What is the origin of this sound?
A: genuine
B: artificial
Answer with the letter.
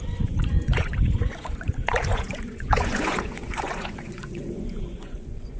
B